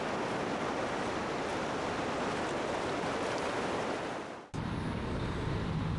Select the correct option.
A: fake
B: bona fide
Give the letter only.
B